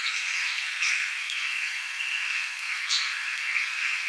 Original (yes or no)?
no